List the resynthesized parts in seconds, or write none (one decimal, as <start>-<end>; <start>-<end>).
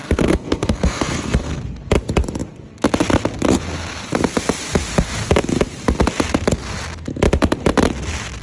0.0-1.6